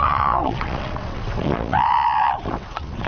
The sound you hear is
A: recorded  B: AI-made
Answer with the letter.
B